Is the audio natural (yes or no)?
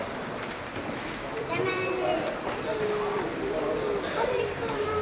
no